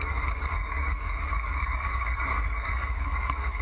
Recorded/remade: remade